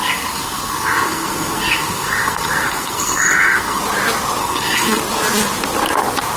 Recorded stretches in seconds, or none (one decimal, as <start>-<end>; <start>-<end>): 3.8-4.4; 5.0-6.4